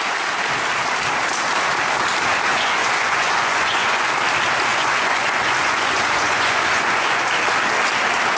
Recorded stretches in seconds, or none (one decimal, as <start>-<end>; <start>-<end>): 0.0-2.5; 4.1-4.7; 7.3-8.4